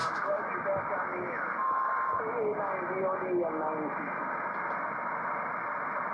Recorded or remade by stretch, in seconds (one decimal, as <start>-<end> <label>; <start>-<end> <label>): 0.0-0.5 remade; 0.5-1.1 recorded; 1.1-2.2 remade; 2.2-6.1 recorded